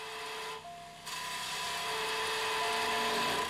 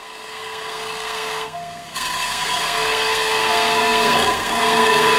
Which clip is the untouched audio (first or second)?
first